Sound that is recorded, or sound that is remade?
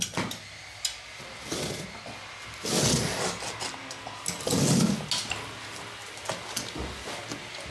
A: recorded